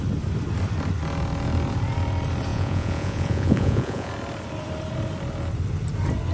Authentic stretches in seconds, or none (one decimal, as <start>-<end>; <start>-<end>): 0.0-2.5; 4.1-6.3